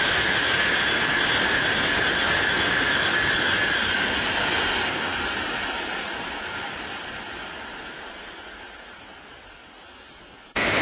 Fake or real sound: real